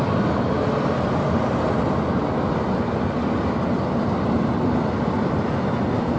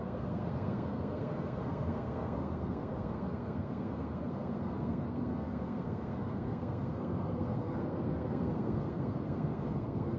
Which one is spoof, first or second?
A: second